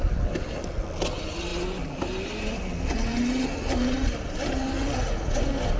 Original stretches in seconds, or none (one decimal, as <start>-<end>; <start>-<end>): 0.0-5.8